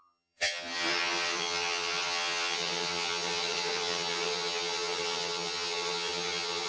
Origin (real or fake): fake